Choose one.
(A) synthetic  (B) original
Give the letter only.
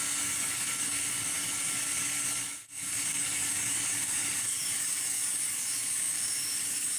A